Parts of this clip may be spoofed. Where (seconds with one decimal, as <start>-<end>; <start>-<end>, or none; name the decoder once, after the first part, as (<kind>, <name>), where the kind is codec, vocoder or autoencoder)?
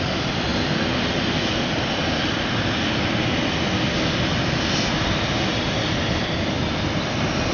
none